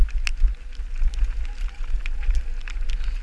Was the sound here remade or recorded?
recorded